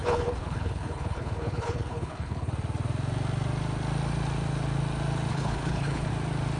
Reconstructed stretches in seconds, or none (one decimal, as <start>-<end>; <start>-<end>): 0.0-2.5; 5.3-6.1